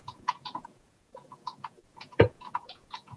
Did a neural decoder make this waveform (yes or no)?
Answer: yes